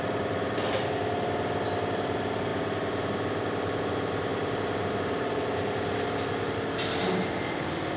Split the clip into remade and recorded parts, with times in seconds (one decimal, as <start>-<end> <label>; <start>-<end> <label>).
0.0-8.0 recorded